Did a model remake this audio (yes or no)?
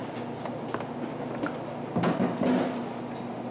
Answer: no